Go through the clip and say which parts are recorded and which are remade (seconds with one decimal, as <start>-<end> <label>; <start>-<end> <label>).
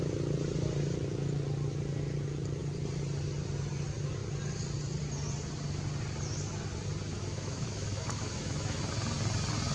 0.0-7.1 recorded; 7.1-8.9 remade; 8.9-9.7 recorded